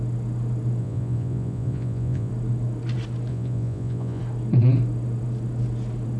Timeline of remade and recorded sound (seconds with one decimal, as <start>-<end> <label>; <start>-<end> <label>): 0.0-0.8 recorded; 0.8-2.3 remade; 2.3-3.3 recorded; 3.3-4.2 remade; 4.2-6.2 recorded